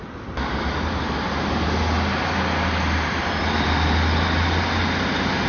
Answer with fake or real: real